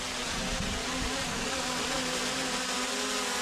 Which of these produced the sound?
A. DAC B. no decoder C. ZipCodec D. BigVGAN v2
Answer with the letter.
B